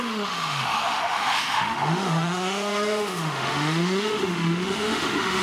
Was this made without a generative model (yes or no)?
no